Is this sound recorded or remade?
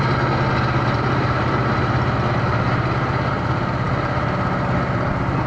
recorded